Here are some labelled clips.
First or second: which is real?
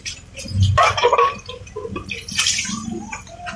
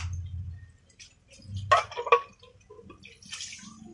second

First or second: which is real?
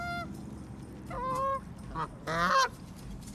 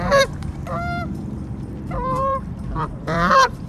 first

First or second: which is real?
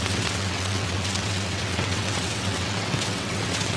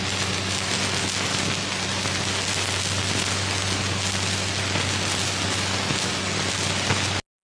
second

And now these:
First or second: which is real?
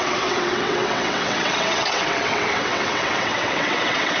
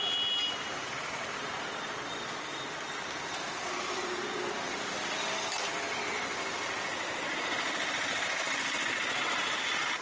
second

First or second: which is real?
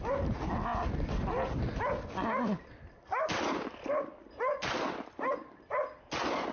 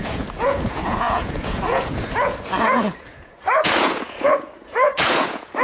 first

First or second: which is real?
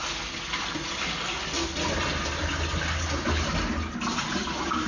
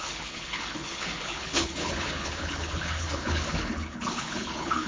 first